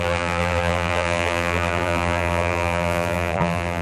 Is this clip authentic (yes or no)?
no